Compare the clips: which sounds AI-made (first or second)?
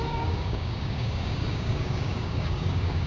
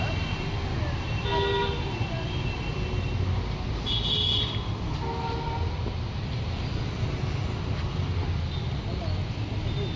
first